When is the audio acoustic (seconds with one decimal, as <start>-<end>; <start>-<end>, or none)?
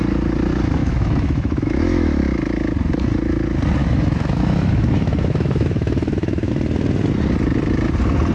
0.0-0.8; 2.2-3.8; 6.5-8.3